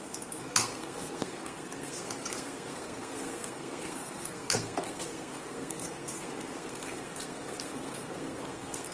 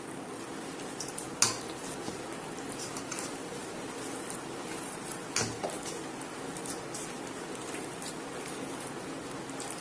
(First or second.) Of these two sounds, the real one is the second